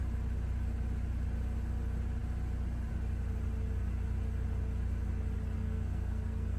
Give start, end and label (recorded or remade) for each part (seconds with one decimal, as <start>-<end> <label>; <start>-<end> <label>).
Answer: 0.0-5.6 recorded; 5.6-6.6 remade